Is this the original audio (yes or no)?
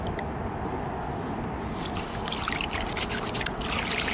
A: yes